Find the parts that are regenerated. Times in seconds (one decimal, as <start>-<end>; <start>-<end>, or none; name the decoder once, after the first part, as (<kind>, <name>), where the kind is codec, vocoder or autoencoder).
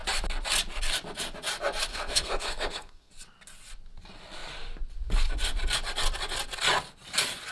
1.9-3.1 (codec, SNAC)